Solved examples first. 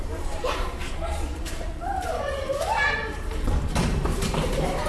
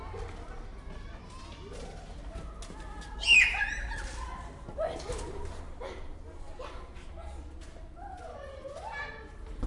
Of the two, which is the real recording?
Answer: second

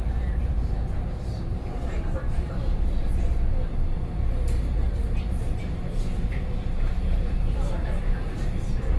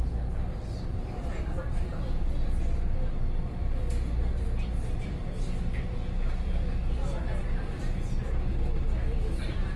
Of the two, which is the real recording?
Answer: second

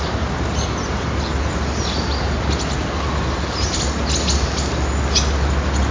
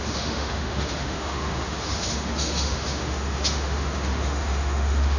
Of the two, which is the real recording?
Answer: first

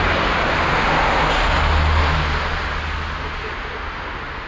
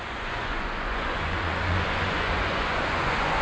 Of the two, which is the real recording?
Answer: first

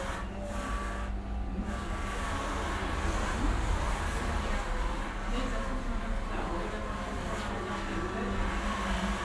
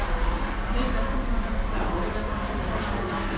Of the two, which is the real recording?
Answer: first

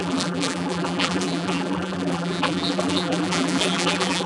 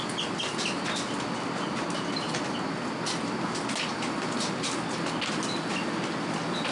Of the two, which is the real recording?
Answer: second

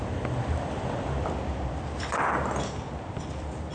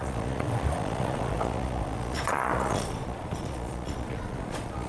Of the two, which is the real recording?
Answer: first